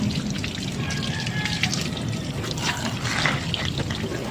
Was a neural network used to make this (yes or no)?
no